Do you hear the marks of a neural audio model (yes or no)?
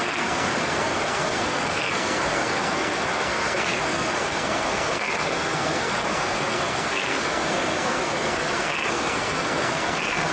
yes